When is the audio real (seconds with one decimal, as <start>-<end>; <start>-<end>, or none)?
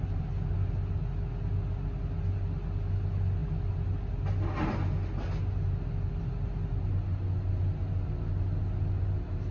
0.0-9.5